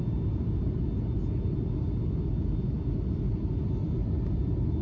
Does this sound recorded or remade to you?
recorded